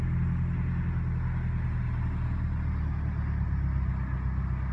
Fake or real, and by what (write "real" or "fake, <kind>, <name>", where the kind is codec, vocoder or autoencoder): real